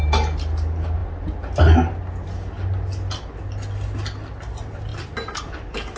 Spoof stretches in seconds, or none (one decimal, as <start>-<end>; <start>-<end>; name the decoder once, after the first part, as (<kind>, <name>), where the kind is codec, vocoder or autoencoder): none